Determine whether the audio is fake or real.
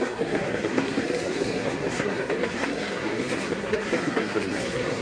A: fake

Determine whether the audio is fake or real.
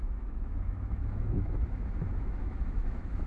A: fake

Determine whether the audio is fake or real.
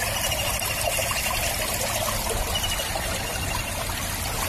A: real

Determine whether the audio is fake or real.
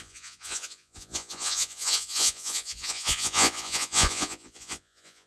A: fake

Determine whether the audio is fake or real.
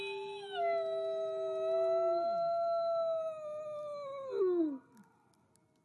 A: real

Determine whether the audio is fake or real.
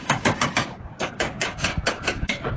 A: fake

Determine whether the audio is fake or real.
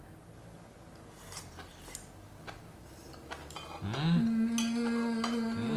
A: real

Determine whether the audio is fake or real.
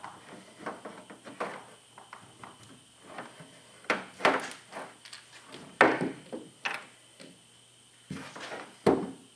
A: real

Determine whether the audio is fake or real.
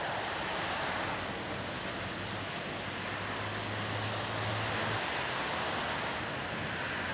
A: real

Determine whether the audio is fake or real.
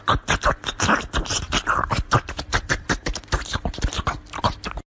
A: real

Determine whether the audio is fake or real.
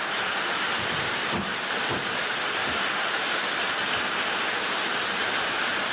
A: real